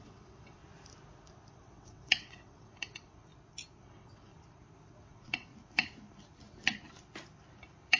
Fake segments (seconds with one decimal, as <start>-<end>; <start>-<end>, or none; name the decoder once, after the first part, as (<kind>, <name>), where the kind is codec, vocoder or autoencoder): 0.0-0.6 (vocoder, WaveNeXt); 1.5-3.3; 3.8-4.3; 4.9-5.5